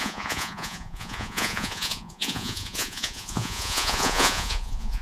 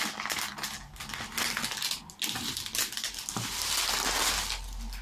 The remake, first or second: first